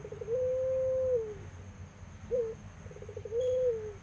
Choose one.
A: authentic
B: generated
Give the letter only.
A